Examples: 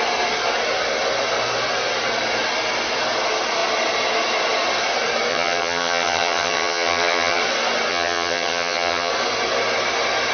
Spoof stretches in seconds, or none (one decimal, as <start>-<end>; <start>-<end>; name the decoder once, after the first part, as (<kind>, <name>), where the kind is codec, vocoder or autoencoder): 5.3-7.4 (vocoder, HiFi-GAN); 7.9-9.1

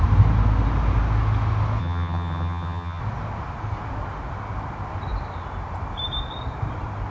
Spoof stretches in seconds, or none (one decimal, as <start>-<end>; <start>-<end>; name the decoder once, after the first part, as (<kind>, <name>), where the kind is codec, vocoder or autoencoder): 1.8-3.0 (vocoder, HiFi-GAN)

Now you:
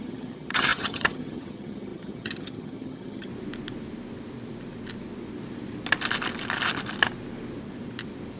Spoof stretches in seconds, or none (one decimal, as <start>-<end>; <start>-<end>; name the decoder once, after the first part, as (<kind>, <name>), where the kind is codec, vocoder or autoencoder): 0.0-3.3 (vocoder, HiFi-GAN)

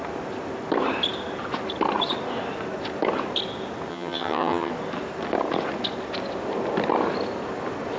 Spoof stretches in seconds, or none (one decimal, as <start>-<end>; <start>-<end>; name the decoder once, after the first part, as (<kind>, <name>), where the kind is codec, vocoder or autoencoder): 3.9-4.7 (vocoder, HiFi-GAN)

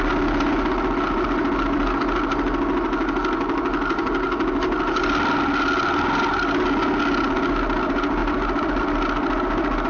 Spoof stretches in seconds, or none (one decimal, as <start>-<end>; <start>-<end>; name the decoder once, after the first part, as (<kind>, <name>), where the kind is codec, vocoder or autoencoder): none